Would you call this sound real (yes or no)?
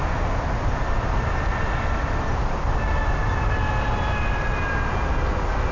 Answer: yes